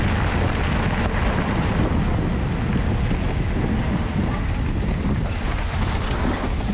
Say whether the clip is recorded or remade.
recorded